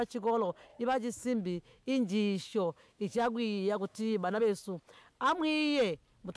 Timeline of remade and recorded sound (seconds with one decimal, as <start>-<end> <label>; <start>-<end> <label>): 0.0-0.7 recorded; 0.7-4.4 remade; 4.4-6.4 recorded